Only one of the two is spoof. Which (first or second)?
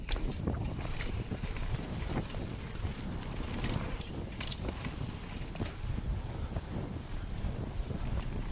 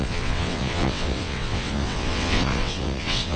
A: second